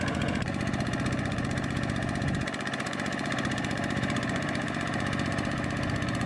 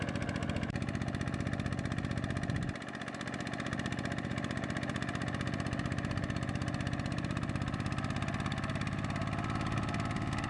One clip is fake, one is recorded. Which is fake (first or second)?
first